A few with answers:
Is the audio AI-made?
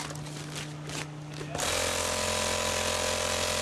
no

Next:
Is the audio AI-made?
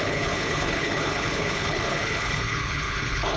yes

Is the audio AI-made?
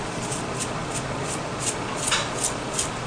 no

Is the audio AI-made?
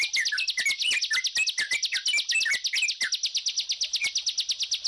no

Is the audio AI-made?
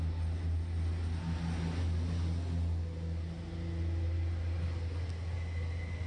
no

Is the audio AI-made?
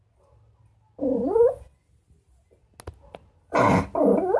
no